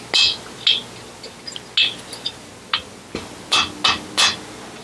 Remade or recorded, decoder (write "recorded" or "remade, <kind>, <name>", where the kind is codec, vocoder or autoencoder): recorded